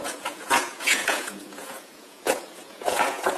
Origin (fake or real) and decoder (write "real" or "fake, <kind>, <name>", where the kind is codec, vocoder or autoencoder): fake, vocoder, Vocos